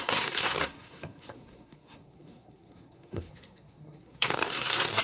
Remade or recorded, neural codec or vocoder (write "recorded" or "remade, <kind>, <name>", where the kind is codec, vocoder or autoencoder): remade, codec, SNAC